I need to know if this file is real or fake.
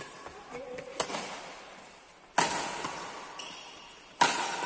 real